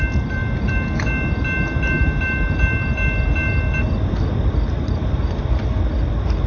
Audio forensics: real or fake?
real